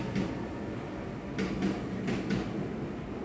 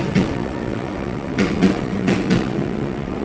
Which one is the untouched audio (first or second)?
first